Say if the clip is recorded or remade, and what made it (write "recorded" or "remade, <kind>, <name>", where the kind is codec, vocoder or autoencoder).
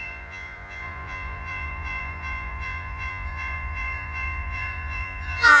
remade, vocoder, Vocos